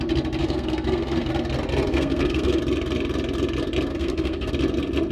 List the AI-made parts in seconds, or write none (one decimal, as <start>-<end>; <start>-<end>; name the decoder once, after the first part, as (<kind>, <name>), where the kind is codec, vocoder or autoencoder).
0.4-1.3 (codec, SNAC); 1.9-2.6; 3.9-4.5